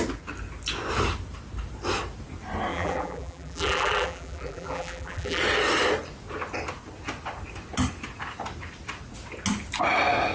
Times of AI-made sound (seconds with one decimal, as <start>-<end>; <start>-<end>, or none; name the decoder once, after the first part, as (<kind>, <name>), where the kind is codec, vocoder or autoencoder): 2.7-5.4 (vocoder, BigVGAN v2)